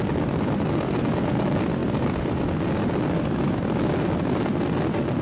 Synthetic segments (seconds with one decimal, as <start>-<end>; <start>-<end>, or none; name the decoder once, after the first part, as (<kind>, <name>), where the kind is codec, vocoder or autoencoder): none

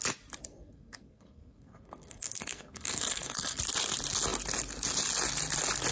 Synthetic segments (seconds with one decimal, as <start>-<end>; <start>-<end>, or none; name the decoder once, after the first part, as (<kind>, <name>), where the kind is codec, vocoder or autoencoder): 0.5-3.6 (codec, SNAC)

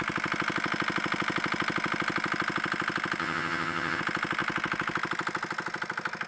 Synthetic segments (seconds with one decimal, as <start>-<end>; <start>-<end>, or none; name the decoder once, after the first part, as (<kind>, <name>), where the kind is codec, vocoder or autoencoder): 3.2-4.0 (vocoder, HiFi-GAN)

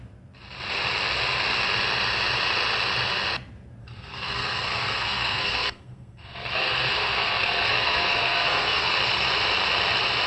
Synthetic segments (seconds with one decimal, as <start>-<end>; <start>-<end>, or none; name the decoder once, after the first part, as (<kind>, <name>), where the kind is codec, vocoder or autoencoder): 3.8-8.9 (codec, SNAC)

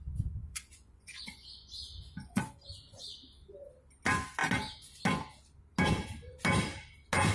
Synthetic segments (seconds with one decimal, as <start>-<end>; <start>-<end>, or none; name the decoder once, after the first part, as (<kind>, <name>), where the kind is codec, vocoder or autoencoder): 0.4-3.0 (vocoder, Vocos)

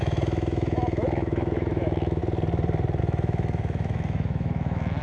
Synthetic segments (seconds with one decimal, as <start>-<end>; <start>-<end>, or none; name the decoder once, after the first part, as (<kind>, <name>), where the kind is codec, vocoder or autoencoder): 0.0-2.2 (autoencoder, DAC-VAE); 3.0-5.0

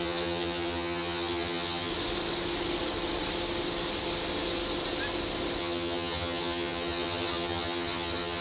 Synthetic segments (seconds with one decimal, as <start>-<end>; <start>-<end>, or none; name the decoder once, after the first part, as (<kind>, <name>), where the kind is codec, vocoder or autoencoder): 0.0-1.9 (vocoder, HiFi-GAN); 5.6-8.4

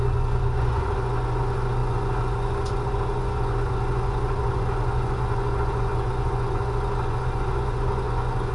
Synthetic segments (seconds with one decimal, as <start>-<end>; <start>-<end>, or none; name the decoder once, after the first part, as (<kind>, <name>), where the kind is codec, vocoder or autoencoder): 0.0-8.5 (vocoder, Vocos)